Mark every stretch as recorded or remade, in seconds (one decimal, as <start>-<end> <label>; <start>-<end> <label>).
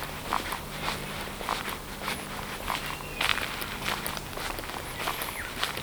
0.0-3.3 recorded; 3.3-4.1 remade; 4.1-5.8 recorded